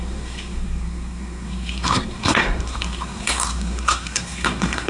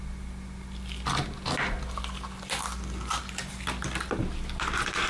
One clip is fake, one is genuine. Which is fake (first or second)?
first